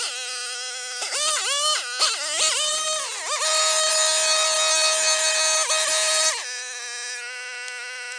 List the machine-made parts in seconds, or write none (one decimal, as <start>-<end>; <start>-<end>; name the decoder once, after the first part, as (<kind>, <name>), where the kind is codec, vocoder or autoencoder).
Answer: none